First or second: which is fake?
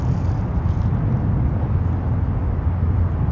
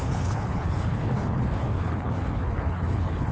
second